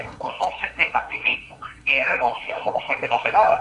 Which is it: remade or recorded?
remade